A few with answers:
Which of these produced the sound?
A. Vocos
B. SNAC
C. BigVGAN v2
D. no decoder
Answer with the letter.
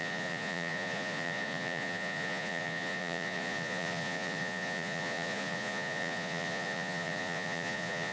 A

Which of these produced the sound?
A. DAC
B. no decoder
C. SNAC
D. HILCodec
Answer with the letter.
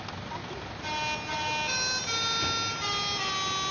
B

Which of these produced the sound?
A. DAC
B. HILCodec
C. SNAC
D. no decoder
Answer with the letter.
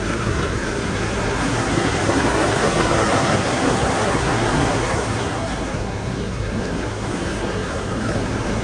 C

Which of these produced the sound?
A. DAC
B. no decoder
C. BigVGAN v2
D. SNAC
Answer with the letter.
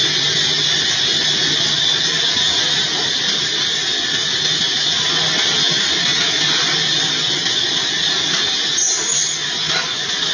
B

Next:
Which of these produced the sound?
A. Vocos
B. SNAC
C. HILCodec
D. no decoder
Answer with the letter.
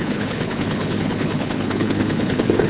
C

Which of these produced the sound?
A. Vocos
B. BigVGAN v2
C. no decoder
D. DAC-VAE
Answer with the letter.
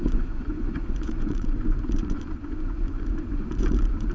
A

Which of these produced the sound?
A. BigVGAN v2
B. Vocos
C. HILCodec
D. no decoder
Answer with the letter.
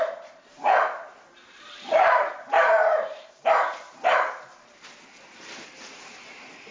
A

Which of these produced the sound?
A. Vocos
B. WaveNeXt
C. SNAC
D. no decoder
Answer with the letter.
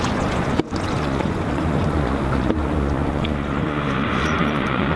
A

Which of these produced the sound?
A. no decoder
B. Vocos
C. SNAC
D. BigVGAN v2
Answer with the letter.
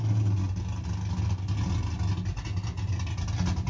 A